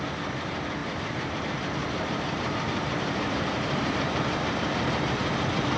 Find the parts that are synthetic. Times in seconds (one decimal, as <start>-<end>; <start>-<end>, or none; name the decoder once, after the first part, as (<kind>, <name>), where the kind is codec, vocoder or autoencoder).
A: 0.8-1.4 (vocoder, BigVGAN v2); 1.8-5.3